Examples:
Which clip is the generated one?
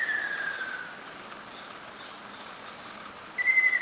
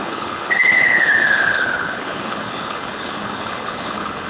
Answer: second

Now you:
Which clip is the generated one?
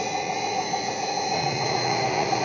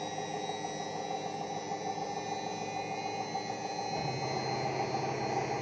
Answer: first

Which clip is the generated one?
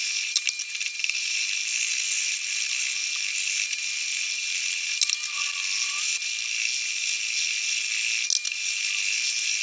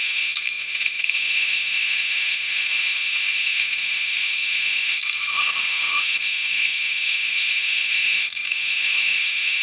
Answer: second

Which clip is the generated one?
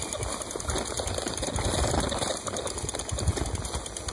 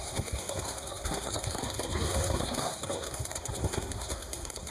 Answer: second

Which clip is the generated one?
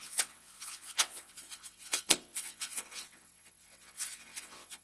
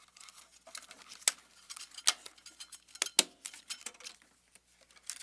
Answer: first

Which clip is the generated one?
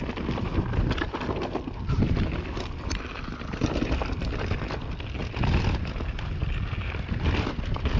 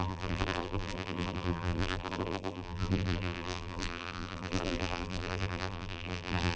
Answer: second